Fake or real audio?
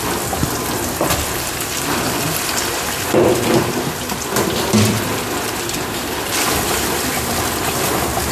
fake